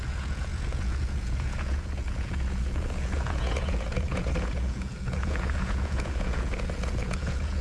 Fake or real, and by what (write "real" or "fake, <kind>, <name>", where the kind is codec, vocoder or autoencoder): fake, vocoder, Vocos